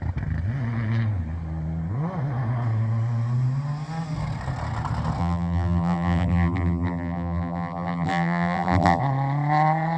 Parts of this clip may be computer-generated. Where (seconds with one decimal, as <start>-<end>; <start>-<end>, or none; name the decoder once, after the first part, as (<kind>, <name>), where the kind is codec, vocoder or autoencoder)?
5.2-9.0 (vocoder, BigVGAN v2)